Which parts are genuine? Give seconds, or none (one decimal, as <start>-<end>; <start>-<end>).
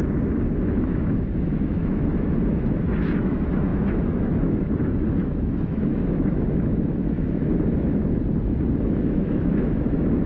8.0-8.8